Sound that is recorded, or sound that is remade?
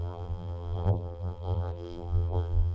remade